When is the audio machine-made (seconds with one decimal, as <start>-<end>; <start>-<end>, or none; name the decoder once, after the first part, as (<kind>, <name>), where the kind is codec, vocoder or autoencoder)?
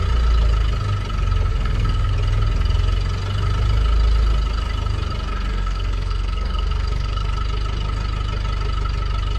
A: 1.5-2.1 (codec, SNAC); 5.5-7.3